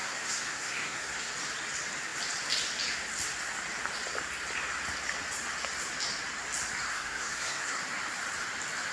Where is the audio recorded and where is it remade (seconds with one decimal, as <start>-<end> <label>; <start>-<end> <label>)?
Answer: 0.0-1.3 remade; 1.3-6.9 recorded; 6.9-7.8 remade; 7.8-8.9 recorded